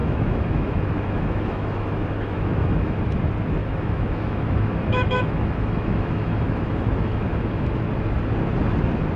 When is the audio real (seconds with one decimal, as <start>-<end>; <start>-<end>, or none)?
3.0-3.6; 7.9-9.2